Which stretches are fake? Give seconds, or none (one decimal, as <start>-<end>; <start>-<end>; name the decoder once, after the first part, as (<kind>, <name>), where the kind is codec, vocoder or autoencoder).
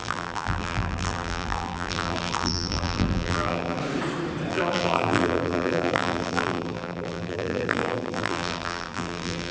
0.0-3.8 (vocoder, BigVGAN v2); 4.5-9.5